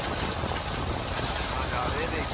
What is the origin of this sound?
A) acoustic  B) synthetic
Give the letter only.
A